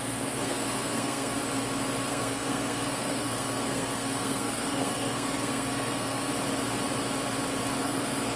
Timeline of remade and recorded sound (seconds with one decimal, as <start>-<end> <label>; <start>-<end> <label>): 0.0-1.4 remade; 1.4-2.1 recorded; 2.1-6.3 remade; 6.3-7.8 recorded; 7.8-8.4 remade